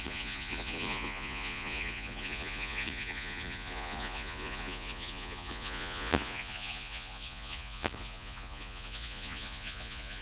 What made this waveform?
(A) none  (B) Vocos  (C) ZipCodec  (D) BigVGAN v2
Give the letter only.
B